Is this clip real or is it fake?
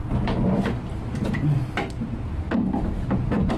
real